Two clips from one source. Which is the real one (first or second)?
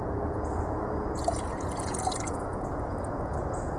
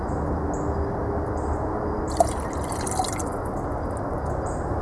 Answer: second